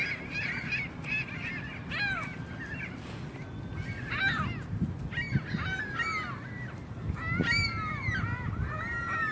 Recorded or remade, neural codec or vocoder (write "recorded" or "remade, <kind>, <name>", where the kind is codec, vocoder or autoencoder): recorded